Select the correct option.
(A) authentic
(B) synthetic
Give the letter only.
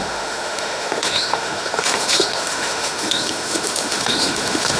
B